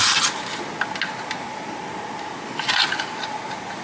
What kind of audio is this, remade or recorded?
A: recorded